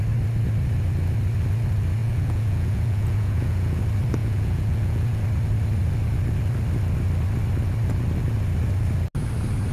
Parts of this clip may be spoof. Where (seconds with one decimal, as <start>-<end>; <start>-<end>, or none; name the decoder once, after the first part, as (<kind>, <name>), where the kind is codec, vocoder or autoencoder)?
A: 2.0-3.8 (vocoder, Vocos); 4.2-5.2